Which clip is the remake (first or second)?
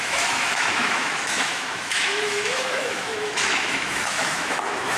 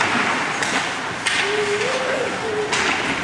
first